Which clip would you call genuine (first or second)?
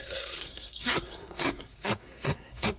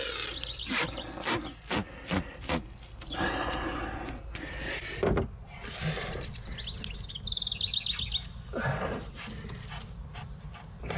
second